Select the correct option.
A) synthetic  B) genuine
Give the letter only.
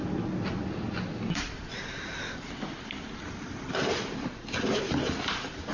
B